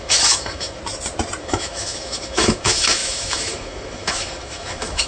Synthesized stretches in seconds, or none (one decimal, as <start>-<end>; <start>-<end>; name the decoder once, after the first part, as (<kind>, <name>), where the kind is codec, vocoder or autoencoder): 0.0-0.8 (autoencoder, DAC-VAE); 1.4-5.1

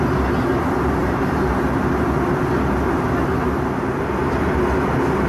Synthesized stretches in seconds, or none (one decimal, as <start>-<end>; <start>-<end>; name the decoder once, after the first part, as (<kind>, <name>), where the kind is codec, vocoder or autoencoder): none